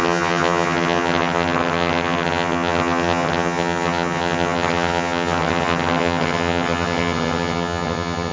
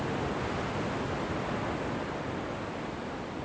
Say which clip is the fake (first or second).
first